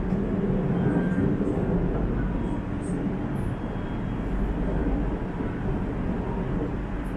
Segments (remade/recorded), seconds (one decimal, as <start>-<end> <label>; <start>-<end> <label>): 0.0-7.2 recorded